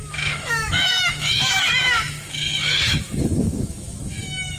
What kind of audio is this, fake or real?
fake